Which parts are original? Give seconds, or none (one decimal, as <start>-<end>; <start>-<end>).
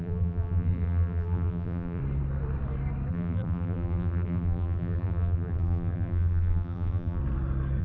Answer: 2.0-3.1; 7.2-7.8